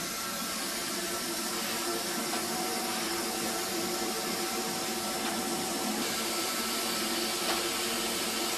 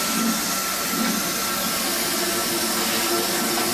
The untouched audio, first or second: second